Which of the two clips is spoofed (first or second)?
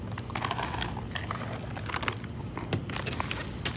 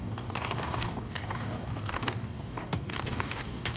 second